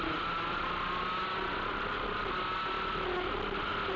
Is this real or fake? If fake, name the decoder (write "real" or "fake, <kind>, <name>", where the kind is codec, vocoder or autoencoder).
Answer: real